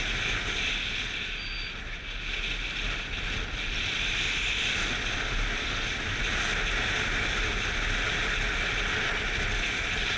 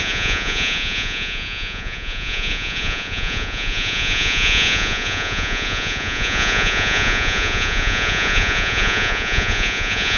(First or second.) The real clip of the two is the first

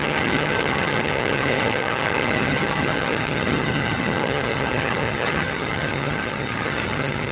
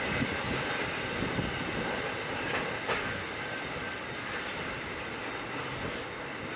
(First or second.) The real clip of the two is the second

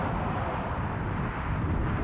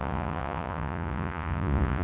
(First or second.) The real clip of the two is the first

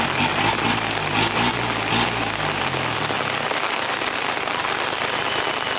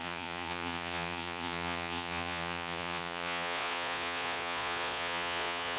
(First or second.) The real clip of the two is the first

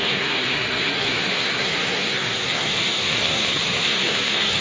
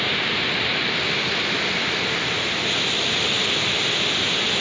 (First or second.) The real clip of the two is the second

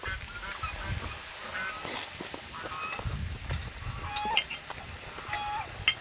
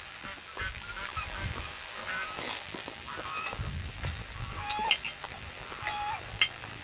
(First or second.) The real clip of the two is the first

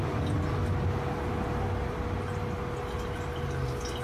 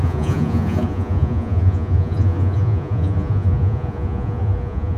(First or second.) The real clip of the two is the first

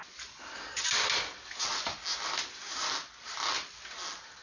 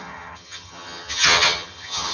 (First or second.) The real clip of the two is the first